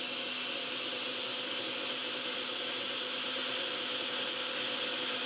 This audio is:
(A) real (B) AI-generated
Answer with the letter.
A